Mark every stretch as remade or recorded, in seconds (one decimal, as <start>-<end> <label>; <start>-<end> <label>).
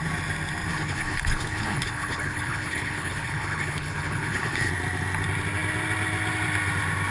0.0-0.7 recorded; 0.7-4.7 remade; 4.7-7.1 recorded